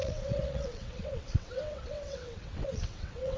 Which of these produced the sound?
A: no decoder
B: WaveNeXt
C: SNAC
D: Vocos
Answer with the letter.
B